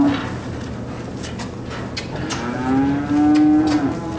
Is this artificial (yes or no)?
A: no